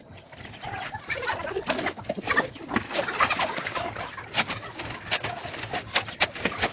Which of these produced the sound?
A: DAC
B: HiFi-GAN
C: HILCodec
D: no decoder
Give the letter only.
D